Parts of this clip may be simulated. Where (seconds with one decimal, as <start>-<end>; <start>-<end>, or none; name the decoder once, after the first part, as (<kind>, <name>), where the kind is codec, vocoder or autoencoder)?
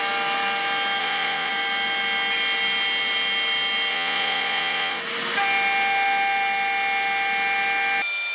1.0-1.5 (vocoder, Vocos); 3.9-5.0